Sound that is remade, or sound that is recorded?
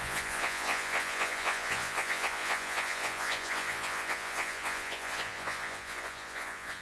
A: remade